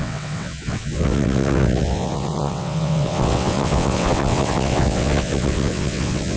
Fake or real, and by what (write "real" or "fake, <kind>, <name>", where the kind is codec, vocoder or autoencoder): fake, vocoder, WaveNeXt